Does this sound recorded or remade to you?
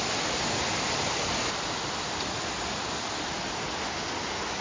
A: recorded